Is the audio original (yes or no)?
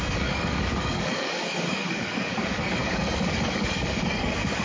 no